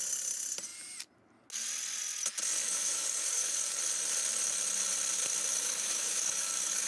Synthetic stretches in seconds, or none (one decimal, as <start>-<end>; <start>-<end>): 2.6-3.8; 5.5-6.9

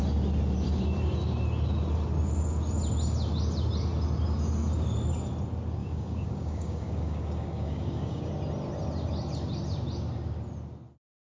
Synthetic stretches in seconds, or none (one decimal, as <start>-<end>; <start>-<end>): 5.8-8.3